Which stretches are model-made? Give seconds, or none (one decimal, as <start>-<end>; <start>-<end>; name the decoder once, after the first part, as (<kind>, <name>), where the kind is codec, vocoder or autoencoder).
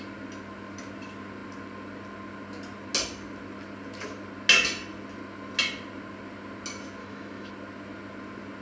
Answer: 7.0-7.5 (autoencoder, DAC-VAE)